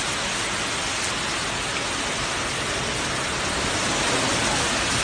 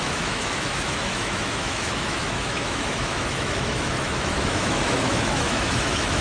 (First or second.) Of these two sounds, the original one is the first